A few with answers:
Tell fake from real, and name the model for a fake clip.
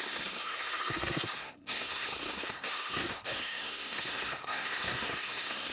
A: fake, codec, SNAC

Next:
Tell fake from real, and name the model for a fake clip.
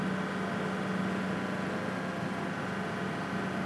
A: real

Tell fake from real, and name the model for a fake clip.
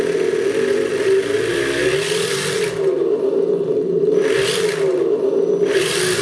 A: real